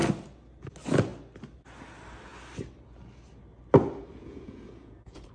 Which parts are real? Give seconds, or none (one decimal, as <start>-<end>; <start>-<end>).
0.0-4.2